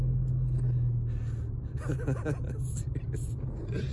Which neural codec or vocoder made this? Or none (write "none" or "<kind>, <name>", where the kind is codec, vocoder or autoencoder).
none